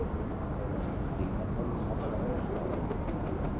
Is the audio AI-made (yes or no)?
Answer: no